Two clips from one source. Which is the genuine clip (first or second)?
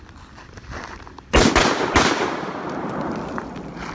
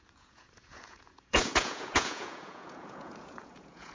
first